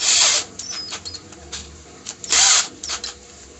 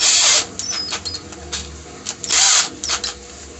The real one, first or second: second